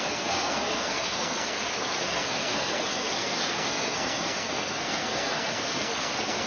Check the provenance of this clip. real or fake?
fake